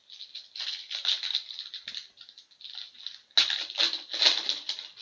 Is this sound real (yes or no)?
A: yes